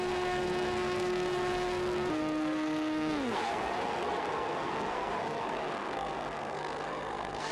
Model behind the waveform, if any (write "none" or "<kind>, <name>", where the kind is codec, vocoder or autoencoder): codec, SNAC